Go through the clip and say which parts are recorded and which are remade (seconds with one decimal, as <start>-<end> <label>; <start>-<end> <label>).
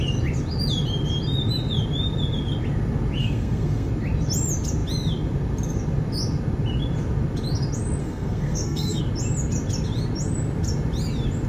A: 0.0-3.2 recorded; 3.2-3.9 remade; 3.9-8.0 recorded; 8.0-9.0 remade; 9.0-11.5 recorded